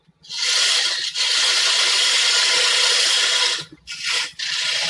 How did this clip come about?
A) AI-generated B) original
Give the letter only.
B